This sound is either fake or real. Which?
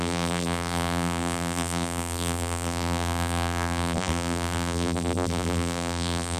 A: fake